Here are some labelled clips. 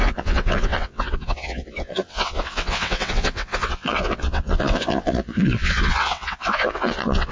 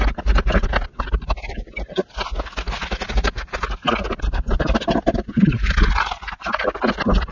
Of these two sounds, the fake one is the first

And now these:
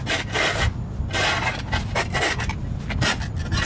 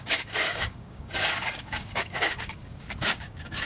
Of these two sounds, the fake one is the second